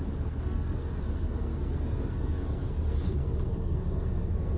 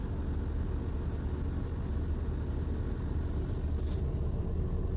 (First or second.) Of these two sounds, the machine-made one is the first